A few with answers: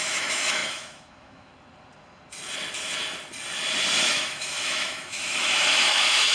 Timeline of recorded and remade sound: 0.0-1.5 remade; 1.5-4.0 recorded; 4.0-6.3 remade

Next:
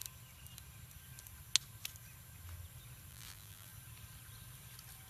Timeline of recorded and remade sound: 0.0-3.1 recorded; 3.1-3.7 remade; 3.7-5.1 recorded

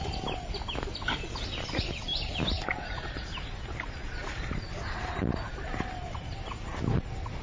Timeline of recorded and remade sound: 0.0-7.4 recorded

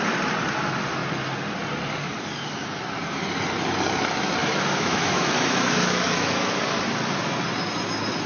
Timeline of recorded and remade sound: 0.0-4.4 recorded; 4.4-6.6 remade; 6.6-8.3 recorded

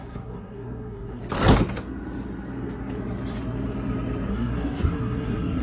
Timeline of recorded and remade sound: 0.0-1.2 remade; 1.2-4.3 recorded; 4.3-5.6 remade

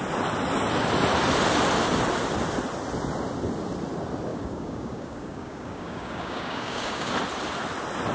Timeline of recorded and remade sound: 0.0-4.3 recorded; 4.3-7.1 remade; 7.1-8.1 recorded